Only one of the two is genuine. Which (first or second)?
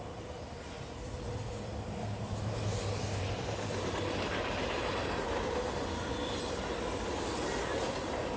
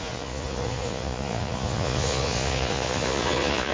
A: first